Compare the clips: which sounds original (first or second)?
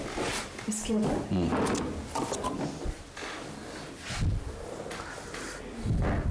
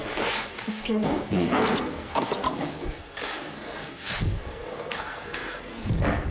first